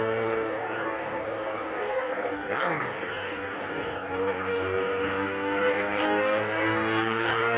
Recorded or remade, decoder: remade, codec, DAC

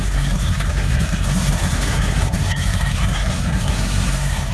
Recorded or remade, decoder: remade, codec, SNAC